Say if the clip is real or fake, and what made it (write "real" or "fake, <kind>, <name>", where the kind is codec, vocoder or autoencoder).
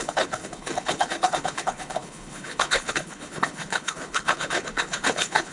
fake, codec, HILCodec